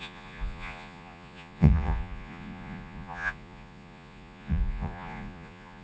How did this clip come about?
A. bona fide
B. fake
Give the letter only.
B